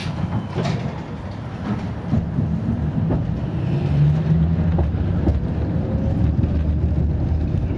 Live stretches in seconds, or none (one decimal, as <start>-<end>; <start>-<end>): 0.0-7.8